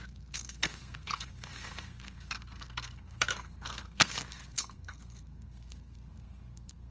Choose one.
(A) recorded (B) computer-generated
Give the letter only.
B